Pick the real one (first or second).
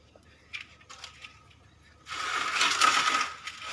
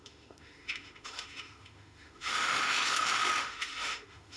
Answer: first